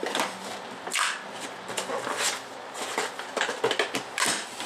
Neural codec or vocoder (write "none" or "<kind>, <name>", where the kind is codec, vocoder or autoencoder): none